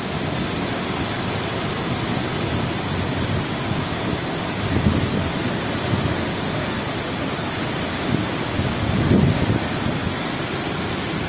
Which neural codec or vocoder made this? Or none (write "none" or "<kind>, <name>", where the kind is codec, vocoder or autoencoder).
none